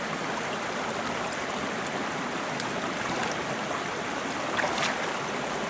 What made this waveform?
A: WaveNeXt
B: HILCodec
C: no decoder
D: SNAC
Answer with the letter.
C